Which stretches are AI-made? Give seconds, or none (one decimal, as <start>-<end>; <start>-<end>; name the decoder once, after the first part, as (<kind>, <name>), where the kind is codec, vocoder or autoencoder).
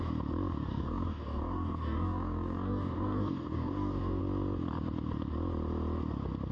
0.7-4.2 (codec, DAC)